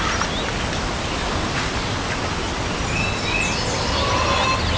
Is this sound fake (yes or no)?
no